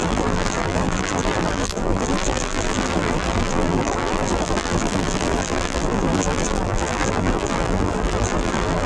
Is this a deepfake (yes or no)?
yes